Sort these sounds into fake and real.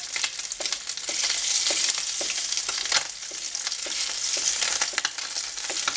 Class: real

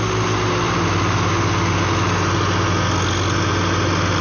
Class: real